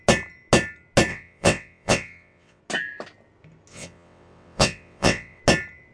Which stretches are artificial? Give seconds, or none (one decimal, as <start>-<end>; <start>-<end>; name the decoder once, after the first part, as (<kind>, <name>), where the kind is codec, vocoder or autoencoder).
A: 1.1-2.6 (vocoder, WaveNeXt); 3.7-5.4